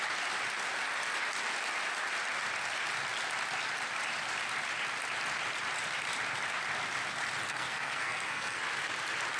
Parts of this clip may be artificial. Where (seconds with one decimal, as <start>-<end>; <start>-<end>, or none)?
7.5-8.6